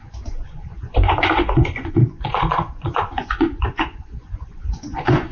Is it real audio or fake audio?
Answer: fake